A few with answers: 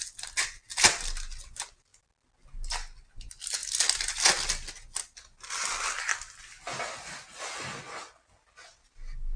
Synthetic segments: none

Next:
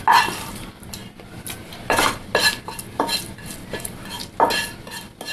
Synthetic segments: none

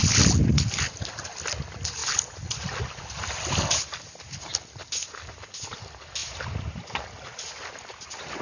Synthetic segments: 6.2-6.8